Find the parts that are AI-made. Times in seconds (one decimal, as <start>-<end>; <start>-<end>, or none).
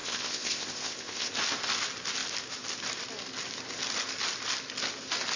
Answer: 0.0-1.3